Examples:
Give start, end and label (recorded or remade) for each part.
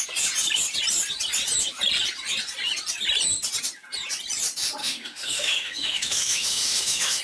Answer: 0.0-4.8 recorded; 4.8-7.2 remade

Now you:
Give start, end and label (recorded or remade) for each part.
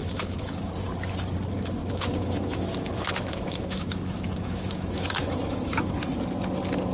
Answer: 0.0-0.7 remade; 0.7-1.8 recorded; 1.8-5.9 remade; 5.9-6.9 recorded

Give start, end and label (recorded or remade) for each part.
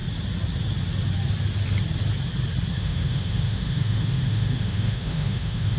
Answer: 0.0-2.7 recorded; 2.7-5.8 remade